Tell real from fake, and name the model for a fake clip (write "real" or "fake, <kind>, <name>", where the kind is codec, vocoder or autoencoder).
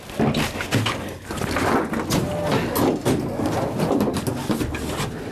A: real